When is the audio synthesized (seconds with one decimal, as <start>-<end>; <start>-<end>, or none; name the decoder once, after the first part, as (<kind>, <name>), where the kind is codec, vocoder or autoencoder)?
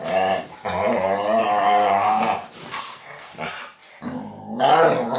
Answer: 1.4-2.2 (codec, SNAC); 2.7-3.3